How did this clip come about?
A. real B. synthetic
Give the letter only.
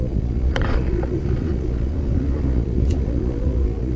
B